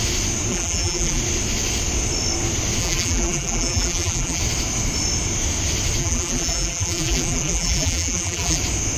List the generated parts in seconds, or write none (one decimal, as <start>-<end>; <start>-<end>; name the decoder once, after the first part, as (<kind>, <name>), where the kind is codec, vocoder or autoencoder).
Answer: 0.5-1.2 (vocoder, BigVGAN v2); 2.8-4.4; 6.0-8.6